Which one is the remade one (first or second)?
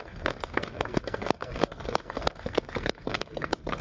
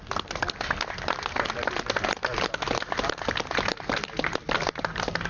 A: first